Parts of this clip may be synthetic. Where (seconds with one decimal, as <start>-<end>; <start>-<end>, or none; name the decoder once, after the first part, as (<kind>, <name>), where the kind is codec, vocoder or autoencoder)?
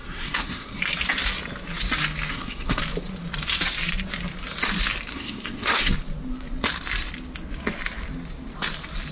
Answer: 0.0-0.8 (codec, SNAC); 2.3-2.8; 5.1-5.9